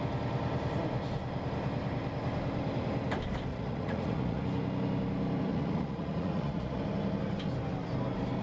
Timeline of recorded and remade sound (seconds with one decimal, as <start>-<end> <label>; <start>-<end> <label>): 0.0-3.5 recorded; 3.5-4.4 remade; 4.4-5.5 recorded; 5.5-6.8 remade; 6.8-8.4 recorded